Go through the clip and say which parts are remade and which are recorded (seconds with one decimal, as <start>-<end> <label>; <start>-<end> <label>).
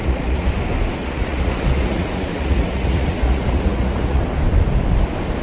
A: 0.0-0.5 remade; 0.5-1.0 recorded; 1.0-4.2 remade; 4.2-5.4 recorded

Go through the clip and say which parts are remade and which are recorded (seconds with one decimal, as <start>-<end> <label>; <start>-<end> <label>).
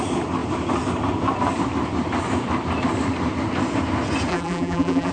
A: 0.0-4.3 recorded; 4.3-5.1 remade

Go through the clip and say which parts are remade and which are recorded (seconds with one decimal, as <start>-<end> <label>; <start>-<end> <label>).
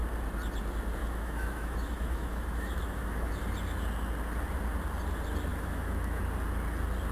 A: 0.0-1.0 recorded; 1.0-3.4 remade; 3.4-5.5 recorded; 5.5-6.2 remade; 6.2-7.1 recorded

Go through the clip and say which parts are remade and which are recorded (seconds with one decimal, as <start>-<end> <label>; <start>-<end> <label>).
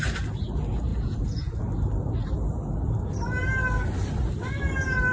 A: 0.0-0.9 recorded; 0.9-1.6 remade; 1.6-5.1 recorded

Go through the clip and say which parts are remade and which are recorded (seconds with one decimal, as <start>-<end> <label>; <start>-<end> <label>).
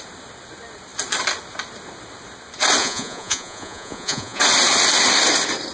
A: 0.0-2.8 recorded; 2.8-4.4 remade; 4.4-5.7 recorded